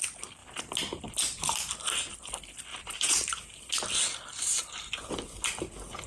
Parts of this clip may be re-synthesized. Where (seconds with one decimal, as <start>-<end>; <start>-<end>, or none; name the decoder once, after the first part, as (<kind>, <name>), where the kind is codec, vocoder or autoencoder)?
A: 2.7-3.7 (vocoder, BigVGAN v2); 4.3-5.0